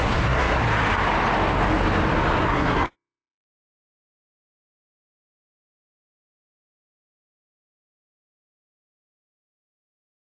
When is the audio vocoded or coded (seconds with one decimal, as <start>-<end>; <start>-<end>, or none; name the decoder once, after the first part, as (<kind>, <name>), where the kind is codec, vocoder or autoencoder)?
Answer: 0.0-0.6 (codec, SNAC); 2.4-10.4